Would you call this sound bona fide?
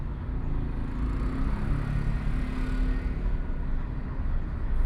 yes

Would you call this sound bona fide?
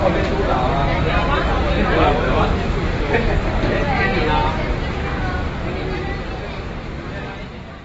yes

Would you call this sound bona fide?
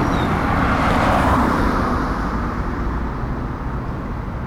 yes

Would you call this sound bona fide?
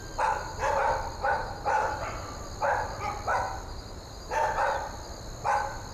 yes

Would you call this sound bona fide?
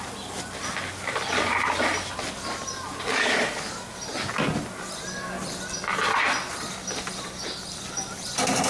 yes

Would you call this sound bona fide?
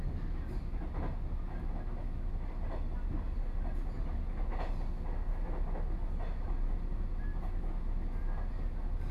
yes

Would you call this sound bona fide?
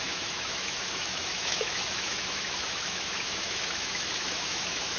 no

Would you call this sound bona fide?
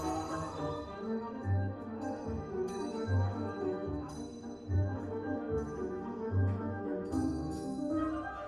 no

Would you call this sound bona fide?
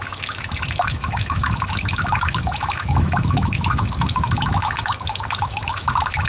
no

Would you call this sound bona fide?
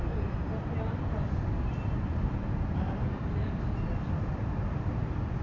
yes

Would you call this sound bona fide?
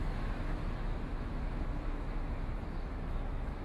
no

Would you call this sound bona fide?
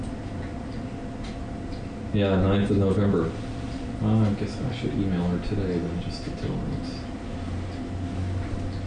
yes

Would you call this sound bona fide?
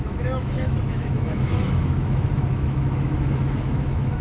no